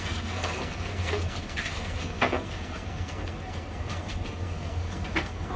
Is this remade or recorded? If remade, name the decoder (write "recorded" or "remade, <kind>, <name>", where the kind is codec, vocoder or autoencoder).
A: remade, codec, SNAC